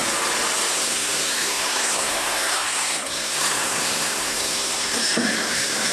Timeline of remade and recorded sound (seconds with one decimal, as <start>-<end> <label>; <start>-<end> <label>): 0.0-0.7 recorded; 0.7-5.9 remade